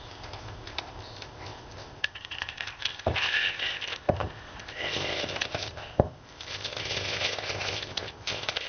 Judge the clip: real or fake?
fake